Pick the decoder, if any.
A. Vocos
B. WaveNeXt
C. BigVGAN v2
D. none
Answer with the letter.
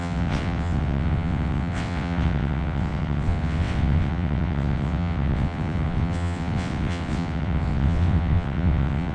B